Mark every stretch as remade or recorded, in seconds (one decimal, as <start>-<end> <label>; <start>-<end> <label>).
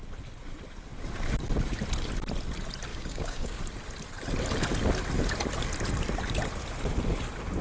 0.0-2.9 recorded; 2.9-3.6 remade; 3.6-7.6 recorded